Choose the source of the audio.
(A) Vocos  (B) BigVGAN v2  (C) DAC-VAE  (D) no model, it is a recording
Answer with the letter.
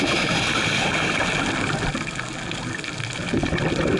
D